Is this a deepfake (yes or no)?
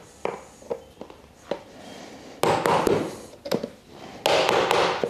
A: no